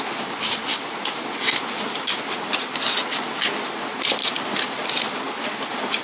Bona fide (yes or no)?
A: yes